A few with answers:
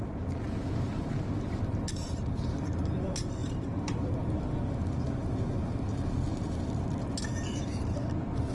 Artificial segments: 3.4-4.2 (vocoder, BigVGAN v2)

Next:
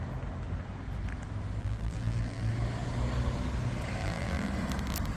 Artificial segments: 1.6-2.5 (vocoder, BigVGAN v2); 4.0-4.5

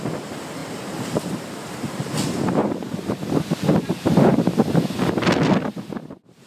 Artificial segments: 0.6-2.1 (vocoder, BigVGAN v2); 2.6-3.2; 3.7-4.6

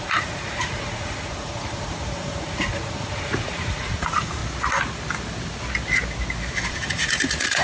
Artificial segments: 0.0-4.4 (vocoder, Vocos); 6.7-7.6

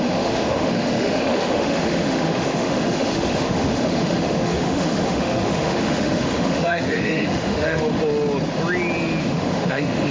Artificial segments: 0.0-7.9 (autoencoder, DAC-VAE); 9.2-10.1

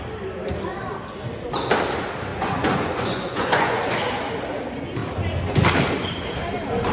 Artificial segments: 2.3-4.0 (vocoder, Vocos)

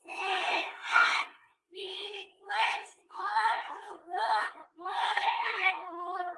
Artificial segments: 0.0-6.4 (codec, SNAC)